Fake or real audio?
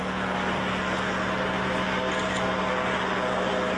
real